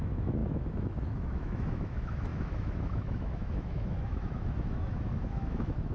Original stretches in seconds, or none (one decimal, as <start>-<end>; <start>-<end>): none